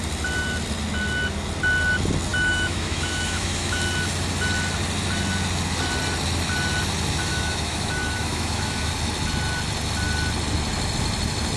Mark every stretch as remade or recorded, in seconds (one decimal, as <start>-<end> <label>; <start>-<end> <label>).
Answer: 0.0-2.3 recorded; 2.3-3.8 remade; 3.8-7.3 recorded; 7.3-8.9 remade; 8.9-11.6 recorded